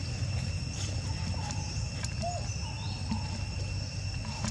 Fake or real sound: real